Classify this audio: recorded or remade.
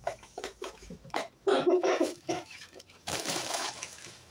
remade